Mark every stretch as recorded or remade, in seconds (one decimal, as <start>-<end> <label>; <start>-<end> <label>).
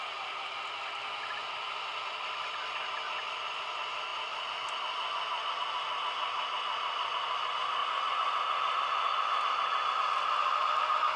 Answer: 0.0-11.2 recorded